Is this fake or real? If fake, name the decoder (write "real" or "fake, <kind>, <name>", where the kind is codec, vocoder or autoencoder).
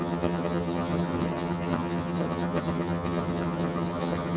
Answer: fake, vocoder, HiFi-GAN